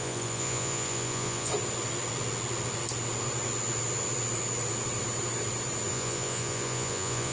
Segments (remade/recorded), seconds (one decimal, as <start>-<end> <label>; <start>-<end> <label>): 0.0-1.5 remade; 1.5-5.9 recorded; 5.9-7.3 remade